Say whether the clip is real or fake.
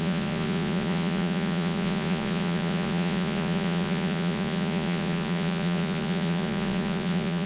fake